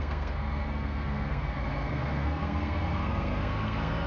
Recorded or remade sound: remade